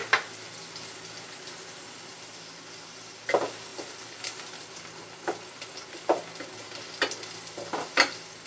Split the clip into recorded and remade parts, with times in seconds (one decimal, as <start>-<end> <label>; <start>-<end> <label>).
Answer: 0.0-8.5 recorded